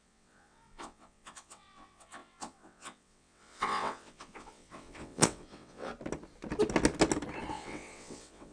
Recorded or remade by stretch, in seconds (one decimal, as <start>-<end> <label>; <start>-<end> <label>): 0.0-5.9 remade; 5.9-7.5 recorded; 7.5-8.5 remade